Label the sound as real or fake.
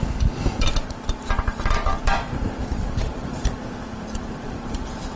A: fake